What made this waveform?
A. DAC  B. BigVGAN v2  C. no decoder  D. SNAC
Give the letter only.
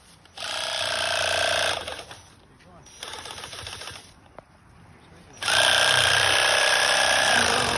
B